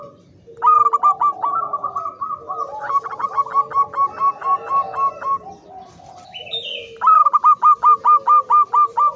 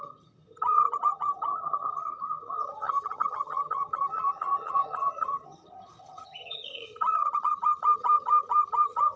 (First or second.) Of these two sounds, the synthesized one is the second